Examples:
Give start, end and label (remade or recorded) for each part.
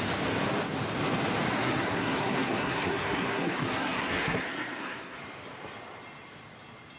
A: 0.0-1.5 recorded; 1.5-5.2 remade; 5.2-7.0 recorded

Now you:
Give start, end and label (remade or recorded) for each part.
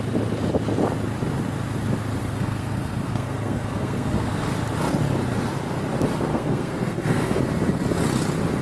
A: 0.0-2.2 recorded; 2.2-4.5 remade; 4.5-6.3 recorded; 6.3-7.4 remade; 7.4-8.6 recorded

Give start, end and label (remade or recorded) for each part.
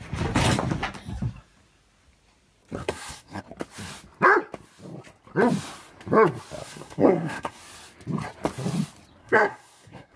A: 0.0-2.8 recorded; 2.8-3.4 remade; 3.4-6.6 recorded; 6.6-7.6 remade; 7.6-9.2 recorded; 9.2-10.2 remade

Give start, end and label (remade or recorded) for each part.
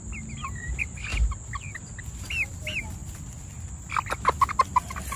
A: 0.0-5.2 recorded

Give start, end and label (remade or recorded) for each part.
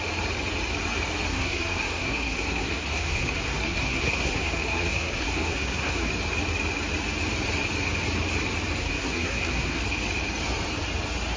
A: 0.0-1.3 recorded; 1.3-6.1 remade; 6.1-8.8 recorded; 8.8-9.8 remade; 9.8-11.4 recorded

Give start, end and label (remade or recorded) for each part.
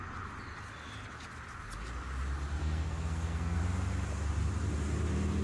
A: 0.0-2.6 recorded; 2.6-3.6 remade; 3.6-5.4 recorded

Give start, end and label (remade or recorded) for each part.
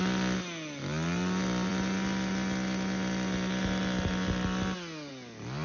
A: 0.0-5.6 recorded